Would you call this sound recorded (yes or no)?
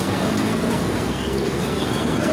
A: no